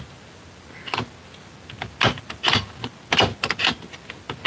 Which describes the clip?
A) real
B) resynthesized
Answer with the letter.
A